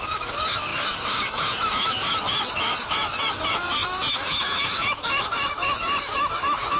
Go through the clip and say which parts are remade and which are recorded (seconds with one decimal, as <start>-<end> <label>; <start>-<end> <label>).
0.0-6.8 remade